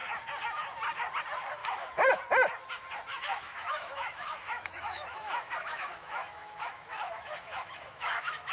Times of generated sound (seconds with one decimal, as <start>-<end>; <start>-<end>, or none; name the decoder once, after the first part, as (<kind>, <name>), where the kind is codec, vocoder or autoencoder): 1.6-2.2 (autoencoder, DAC-VAE); 3.1-8.5